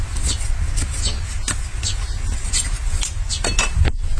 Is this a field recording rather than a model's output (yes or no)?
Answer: yes